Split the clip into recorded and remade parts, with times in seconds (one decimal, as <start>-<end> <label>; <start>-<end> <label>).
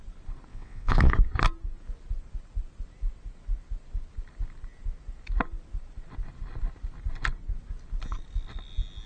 0.0-0.5 recorded; 0.5-1.1 remade; 1.1-9.1 recorded